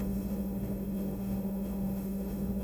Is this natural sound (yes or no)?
no